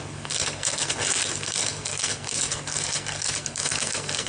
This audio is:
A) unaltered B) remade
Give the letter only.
B